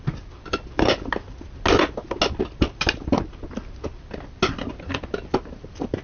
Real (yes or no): yes